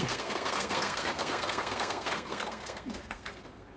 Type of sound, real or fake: fake